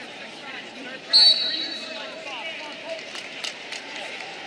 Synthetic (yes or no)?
yes